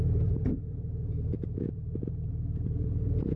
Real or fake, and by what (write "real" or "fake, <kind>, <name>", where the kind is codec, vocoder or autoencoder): fake, vocoder, Vocos